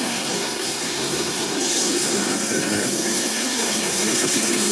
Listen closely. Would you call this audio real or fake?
fake